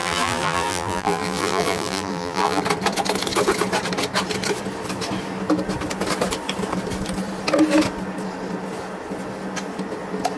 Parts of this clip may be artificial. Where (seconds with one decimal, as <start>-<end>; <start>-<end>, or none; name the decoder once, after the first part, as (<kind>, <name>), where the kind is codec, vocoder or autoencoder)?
0.0-2.6 (vocoder, BigVGAN v2)